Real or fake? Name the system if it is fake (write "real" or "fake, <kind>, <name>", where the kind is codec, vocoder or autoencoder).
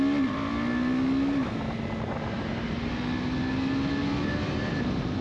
real